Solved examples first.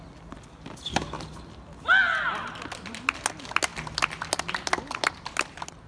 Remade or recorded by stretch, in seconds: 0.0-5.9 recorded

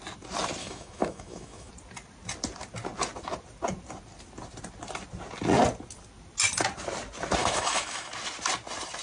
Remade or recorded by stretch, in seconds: 0.0-0.6 recorded; 0.6-1.7 remade; 1.7-7.4 recorded; 7.4-8.1 remade; 8.1-9.0 recorded

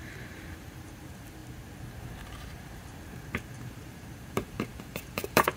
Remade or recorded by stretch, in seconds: 0.0-1.4 remade; 1.4-2.0 recorded; 2.0-5.6 remade

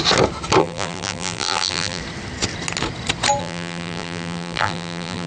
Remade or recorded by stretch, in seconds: 0.0-0.6 recorded; 0.6-2.0 remade; 2.0-3.4 recorded; 3.4-5.3 remade